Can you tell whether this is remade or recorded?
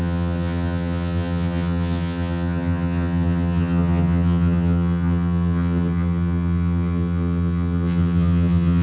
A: remade